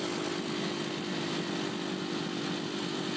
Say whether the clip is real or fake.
real